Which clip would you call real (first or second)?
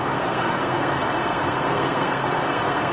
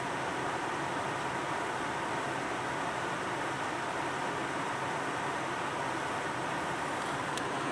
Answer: second